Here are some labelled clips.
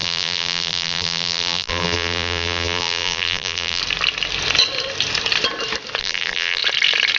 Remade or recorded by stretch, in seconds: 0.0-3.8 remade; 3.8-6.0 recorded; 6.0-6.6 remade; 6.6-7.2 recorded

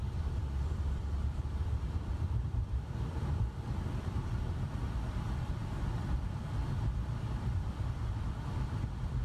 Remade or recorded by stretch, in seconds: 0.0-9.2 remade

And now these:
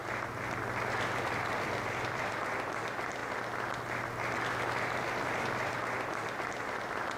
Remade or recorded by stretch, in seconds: 0.0-1.2 recorded; 1.2-3.2 remade; 3.2-5.2 recorded; 5.2-7.2 remade

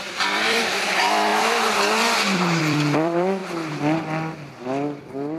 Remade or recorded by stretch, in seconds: 0.0-5.4 remade

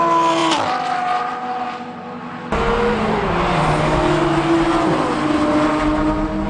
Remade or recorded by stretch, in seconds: 0.0-6.5 recorded